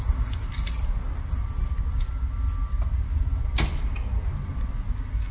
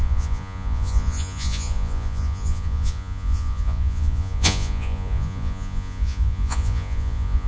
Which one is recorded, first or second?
first